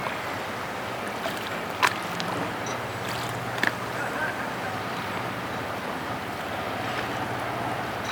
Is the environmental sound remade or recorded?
recorded